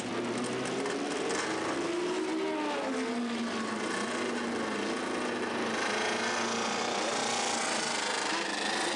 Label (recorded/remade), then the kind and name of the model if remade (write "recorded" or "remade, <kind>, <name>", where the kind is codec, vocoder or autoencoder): recorded